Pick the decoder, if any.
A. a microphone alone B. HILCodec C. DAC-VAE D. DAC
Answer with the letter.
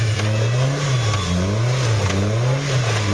A